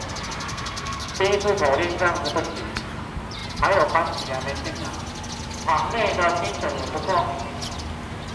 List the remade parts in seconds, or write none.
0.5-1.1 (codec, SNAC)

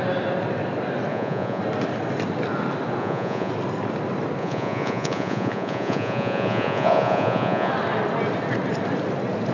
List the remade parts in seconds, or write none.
1.1-1.6 (vocoder, Vocos); 3.0-3.5; 4.4-7.7